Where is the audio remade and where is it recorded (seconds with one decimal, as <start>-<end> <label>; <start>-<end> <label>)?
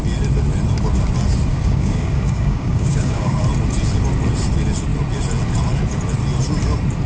0.0-1.5 recorded; 1.5-3.4 remade; 3.4-7.1 recorded